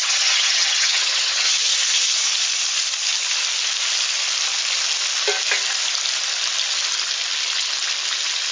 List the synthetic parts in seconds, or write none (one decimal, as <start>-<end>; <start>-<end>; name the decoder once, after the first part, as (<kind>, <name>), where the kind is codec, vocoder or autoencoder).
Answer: 0.0-1.5 (vocoder, HiFi-GAN)